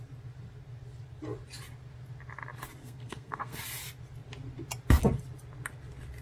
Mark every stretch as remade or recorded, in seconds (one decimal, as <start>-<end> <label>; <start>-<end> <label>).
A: 0.0-2.8 recorded; 2.8-3.6 remade; 3.6-6.2 recorded